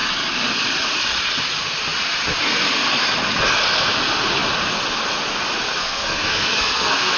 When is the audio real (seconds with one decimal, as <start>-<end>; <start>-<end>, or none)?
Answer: 0.0-5.8